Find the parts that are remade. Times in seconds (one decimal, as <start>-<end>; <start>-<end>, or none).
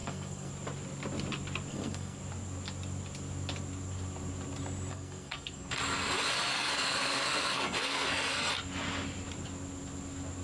0.0-0.5; 1.7-2.2; 4.9-5.7; 6.5-8.5